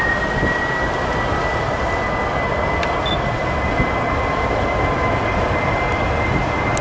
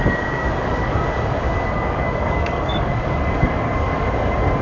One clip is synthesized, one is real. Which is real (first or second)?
first